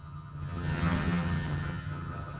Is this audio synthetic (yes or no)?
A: yes